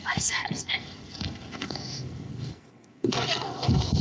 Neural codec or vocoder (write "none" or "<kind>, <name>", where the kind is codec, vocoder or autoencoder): codec, SNAC